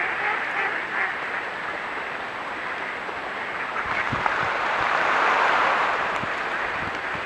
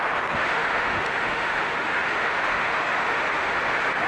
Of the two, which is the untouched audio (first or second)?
first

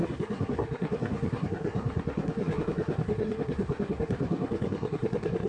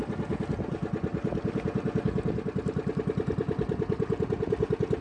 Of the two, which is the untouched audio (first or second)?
second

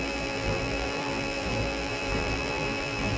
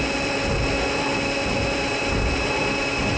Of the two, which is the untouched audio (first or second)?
second